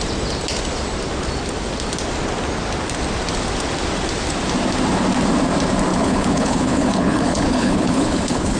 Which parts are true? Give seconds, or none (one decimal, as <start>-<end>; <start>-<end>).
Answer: 0.0-5.9